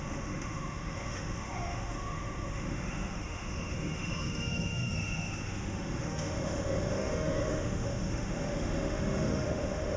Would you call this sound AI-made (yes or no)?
yes